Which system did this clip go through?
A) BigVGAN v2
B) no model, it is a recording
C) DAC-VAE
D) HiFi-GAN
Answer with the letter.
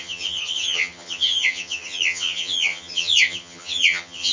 D